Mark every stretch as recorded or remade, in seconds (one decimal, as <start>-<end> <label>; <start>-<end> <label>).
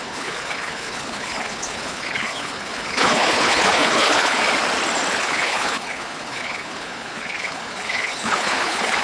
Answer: 0.0-4.4 remade; 4.4-5.1 recorded; 5.1-9.0 remade